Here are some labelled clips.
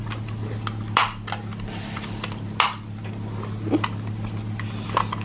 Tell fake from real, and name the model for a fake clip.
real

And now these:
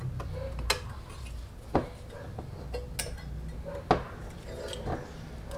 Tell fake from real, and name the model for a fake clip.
real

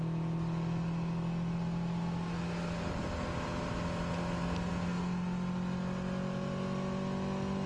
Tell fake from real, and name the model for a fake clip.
real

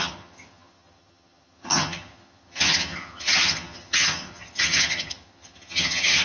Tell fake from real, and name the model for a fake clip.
fake, vocoder, HiFi-GAN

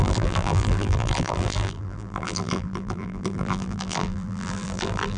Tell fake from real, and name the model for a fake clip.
fake, vocoder, BigVGAN v2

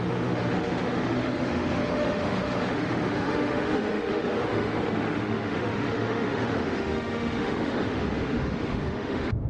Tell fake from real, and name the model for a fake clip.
fake, autoencoder, DAC-VAE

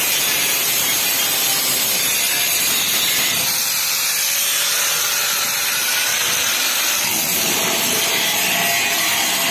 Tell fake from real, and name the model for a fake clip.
fake, vocoder, BigVGAN v2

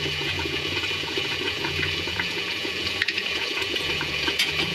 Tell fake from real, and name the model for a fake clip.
fake, vocoder, Vocos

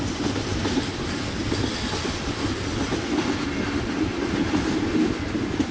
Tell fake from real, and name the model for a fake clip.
real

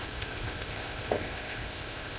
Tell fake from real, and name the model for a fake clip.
fake, codec, ZipCodec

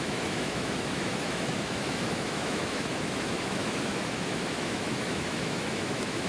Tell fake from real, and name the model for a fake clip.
fake, autoencoder, DAC-VAE